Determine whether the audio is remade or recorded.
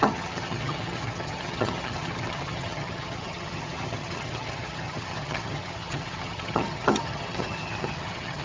remade